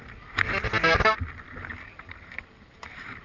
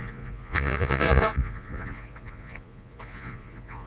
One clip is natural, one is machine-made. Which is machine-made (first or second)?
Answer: second